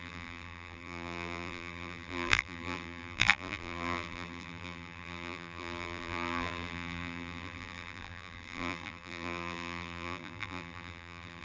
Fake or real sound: fake